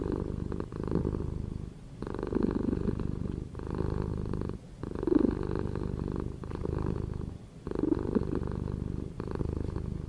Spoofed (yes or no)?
no